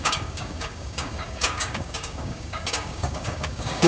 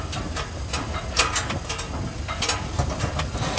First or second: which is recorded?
second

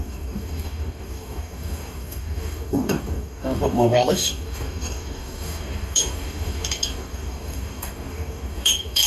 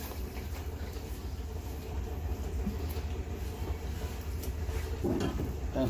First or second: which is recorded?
second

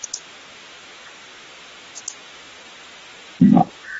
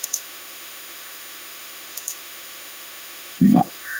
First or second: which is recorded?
first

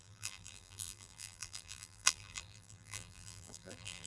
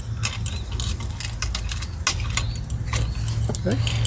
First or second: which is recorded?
second